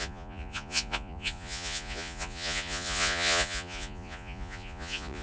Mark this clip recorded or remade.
remade